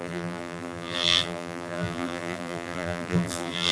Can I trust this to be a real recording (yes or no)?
no